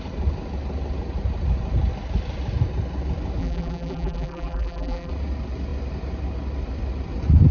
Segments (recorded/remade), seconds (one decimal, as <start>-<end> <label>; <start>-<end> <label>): 0.0-3.4 recorded; 3.4-5.1 remade; 5.1-7.5 recorded